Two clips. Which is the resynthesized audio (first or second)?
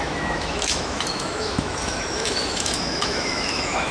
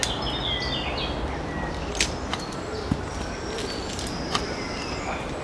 first